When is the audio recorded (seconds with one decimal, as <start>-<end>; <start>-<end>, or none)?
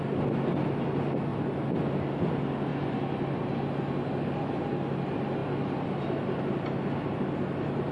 0.0-7.9